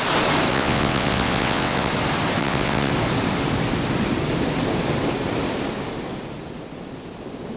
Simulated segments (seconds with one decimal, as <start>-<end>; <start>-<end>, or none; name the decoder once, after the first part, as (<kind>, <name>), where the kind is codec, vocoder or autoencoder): 0.5-1.9 (vocoder, WaveNeXt); 2.4-2.9